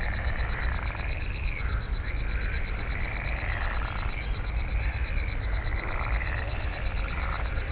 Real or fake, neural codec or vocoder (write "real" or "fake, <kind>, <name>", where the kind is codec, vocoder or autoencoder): real